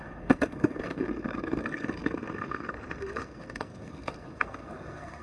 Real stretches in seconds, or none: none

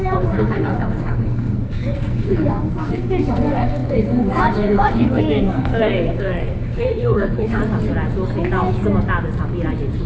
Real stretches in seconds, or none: 7.6-10.1